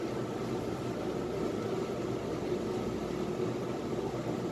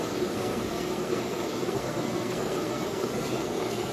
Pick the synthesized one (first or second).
second